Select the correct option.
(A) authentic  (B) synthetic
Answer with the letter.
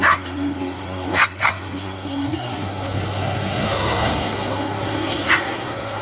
B